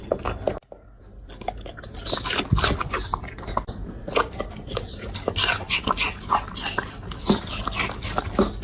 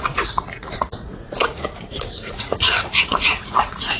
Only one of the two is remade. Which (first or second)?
second